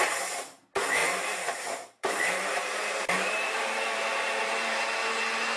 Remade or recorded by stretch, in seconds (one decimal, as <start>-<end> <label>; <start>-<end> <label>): 0.0-1.0 recorded; 1.0-4.4 remade; 4.4-5.6 recorded